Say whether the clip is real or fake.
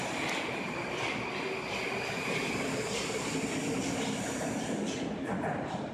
real